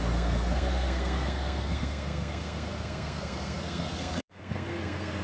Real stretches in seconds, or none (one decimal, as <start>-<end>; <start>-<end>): none